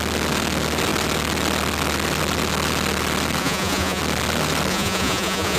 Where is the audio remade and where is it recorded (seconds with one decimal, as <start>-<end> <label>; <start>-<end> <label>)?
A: 0.0-3.4 recorded; 3.4-4.0 remade; 4.0-4.7 recorded; 4.7-5.6 remade